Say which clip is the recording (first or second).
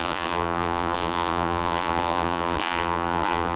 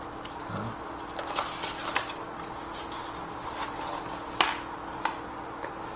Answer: second